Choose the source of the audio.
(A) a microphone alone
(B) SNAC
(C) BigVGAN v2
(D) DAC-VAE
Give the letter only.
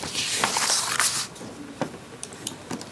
C